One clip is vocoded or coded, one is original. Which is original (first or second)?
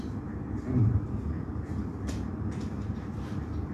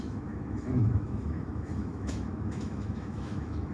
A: first